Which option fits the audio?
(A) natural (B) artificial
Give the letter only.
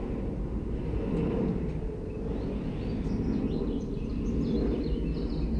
A